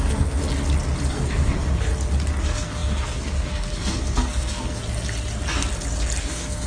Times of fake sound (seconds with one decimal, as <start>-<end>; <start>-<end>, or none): 0.0-0.4; 1.1-1.9; 2.4-4.8; 6.2-6.7